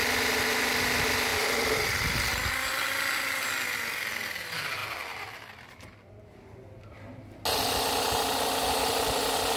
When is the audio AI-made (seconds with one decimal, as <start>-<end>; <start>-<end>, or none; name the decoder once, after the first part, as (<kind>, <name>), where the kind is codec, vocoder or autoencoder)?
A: 1.3-2.5 (vocoder, BigVGAN v2)